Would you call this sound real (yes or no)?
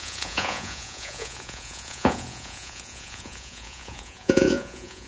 no